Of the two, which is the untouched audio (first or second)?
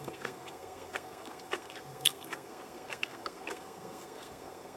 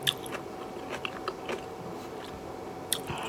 second